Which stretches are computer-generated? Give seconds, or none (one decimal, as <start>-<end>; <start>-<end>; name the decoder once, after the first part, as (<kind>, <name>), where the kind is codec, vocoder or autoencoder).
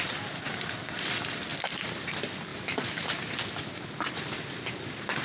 0.0-1.5 (vocoder, BigVGAN v2); 2.0-2.5; 4.1-5.2